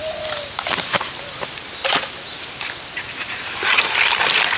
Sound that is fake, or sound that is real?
real